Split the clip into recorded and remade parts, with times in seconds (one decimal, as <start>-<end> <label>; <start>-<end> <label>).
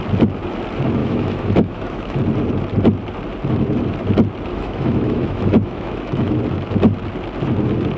0.0-1.0 recorded; 1.0-2.2 remade; 2.2-4.5 recorded; 4.5-6.4 remade; 6.4-8.0 recorded